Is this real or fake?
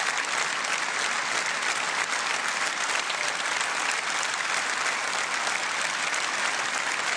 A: real